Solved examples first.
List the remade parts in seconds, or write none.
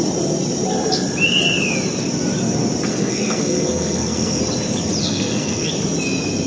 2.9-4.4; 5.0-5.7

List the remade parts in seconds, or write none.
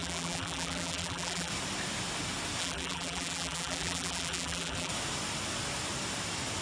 0.0-1.5; 2.6-4.9